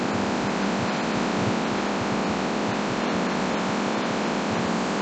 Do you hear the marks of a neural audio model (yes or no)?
no